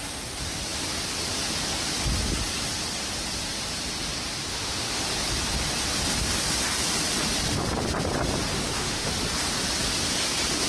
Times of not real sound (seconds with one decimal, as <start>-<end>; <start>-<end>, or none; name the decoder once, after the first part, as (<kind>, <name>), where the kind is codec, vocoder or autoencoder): 4.5-5.0 (autoencoder, DAC-VAE); 8.5-9.1